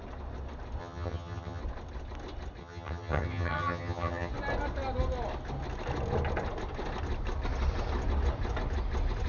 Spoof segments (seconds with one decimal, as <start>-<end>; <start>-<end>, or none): 0.8-1.6; 2.6-4.3